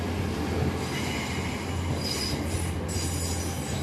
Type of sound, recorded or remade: recorded